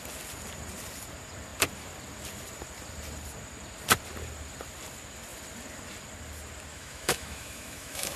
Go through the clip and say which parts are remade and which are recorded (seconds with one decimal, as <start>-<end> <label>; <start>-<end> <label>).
0.0-6.7 recorded; 6.7-8.2 remade